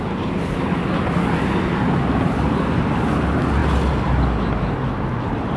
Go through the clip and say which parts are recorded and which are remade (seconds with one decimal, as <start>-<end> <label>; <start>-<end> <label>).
0.0-5.6 recorded